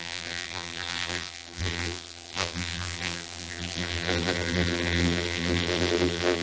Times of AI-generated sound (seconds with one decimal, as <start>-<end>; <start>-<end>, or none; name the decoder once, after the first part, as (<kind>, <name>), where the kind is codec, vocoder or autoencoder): 0.0-6.4 (vocoder, BigVGAN v2)